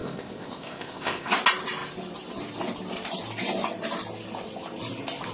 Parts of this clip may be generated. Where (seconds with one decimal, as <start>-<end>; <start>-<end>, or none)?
0.0-1.3